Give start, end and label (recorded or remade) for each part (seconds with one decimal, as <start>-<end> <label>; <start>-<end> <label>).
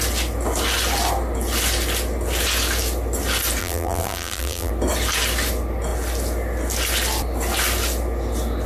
0.0-3.6 recorded; 3.6-4.7 remade; 4.7-8.7 recorded